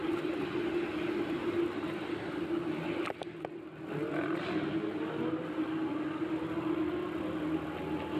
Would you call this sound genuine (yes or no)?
yes